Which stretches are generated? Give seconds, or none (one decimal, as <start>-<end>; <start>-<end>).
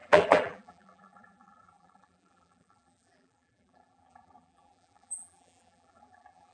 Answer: 0.0-6.5